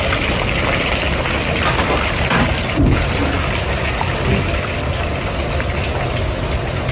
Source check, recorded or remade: recorded